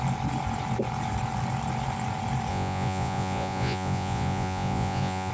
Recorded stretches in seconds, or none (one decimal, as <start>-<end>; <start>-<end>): 0.0-2.5